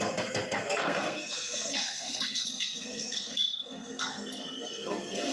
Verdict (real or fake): fake